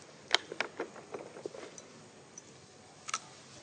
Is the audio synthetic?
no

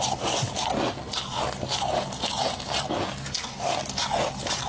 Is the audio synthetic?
no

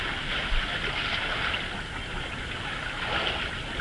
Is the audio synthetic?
no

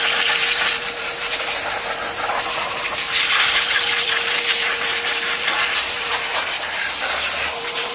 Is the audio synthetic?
yes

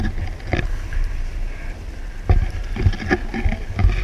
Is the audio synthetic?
no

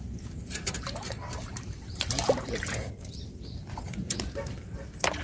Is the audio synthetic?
yes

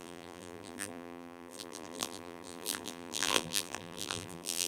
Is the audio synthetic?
yes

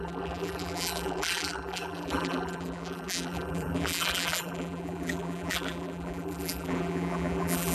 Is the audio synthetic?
yes